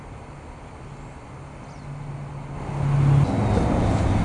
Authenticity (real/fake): real